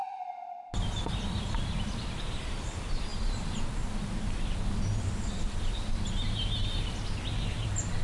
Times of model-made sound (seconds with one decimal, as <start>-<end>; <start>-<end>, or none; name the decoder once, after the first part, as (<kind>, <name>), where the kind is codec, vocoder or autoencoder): none

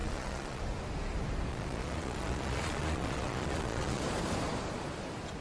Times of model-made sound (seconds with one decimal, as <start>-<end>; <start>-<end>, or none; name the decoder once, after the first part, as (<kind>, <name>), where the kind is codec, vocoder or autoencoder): 0.0-0.6 (vocoder, Vocos); 1.5-4.0

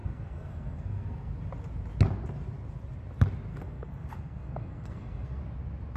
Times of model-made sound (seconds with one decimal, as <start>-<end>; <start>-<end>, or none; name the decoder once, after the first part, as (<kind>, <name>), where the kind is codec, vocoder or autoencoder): 0.0-1.3 (codec, SNAC); 3.5-5.4

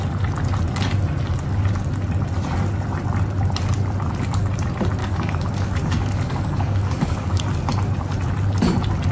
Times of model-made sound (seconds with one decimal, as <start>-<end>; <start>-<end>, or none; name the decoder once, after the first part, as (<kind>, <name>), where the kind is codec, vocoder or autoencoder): 5.0-7.4 (codec, DAC)

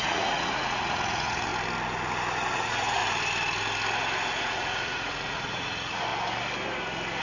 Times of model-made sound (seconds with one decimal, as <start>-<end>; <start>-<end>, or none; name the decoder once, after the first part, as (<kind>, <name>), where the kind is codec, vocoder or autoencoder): 0.0-1.5 (vocoder, Vocos); 2.5-3.0; 4.4-6.1

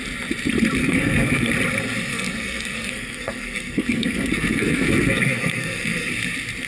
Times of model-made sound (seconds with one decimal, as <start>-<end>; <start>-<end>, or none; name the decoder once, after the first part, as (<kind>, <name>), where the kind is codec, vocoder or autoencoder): 0.8-1.5 (codec, SNAC); 2.1-6.1